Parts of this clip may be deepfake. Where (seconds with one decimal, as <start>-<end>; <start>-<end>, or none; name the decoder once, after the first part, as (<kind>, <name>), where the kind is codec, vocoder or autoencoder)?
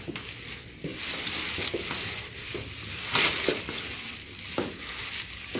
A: none